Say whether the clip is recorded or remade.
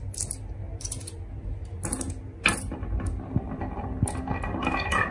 recorded